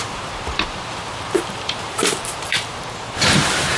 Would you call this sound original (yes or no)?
no